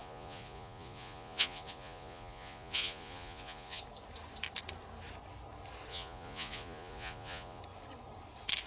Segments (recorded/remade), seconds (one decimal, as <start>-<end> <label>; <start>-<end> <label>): 0.0-3.8 remade; 3.8-5.9 recorded; 5.9-7.6 remade; 7.6-8.7 recorded